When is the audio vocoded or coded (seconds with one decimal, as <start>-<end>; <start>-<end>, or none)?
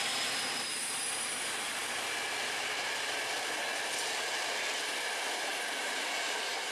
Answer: 0.0-1.8; 5.8-6.7